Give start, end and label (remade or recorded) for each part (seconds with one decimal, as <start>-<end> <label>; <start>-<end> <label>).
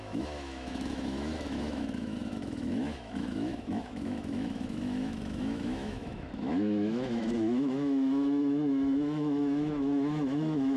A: 0.0-10.8 remade